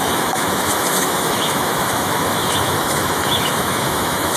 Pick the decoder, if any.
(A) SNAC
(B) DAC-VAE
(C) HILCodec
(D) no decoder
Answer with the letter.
B